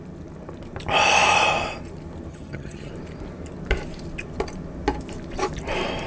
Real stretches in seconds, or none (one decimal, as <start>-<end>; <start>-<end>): 0.0-2.3; 2.9-6.1